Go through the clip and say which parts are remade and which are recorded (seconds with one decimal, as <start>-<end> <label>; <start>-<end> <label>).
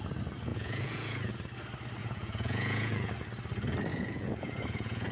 0.0-0.5 recorded; 0.5-1.3 remade; 1.3-2.0 recorded; 2.0-3.1 remade; 3.1-3.9 recorded; 3.9-5.1 remade